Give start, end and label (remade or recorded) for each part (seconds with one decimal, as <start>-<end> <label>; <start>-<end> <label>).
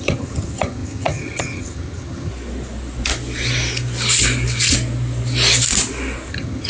0.0-2.3 remade; 2.3-6.3 recorded; 6.3-6.7 remade